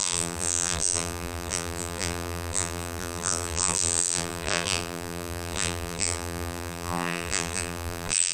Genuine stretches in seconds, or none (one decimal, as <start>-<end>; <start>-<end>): none